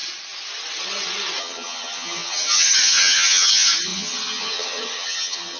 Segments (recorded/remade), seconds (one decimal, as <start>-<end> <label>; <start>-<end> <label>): 0.0-1.4 recorded; 1.4-5.6 remade